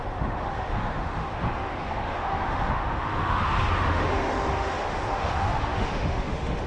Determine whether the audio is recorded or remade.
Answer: remade